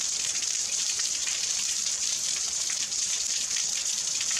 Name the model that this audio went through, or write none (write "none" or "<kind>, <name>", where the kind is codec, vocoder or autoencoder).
vocoder, BigVGAN v2